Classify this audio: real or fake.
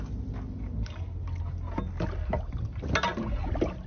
real